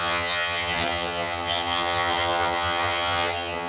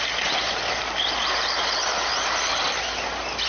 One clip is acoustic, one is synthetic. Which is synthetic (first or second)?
first